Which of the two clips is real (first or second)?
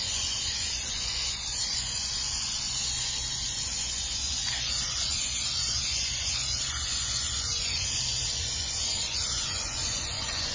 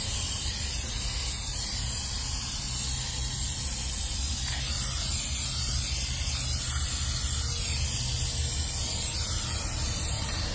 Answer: second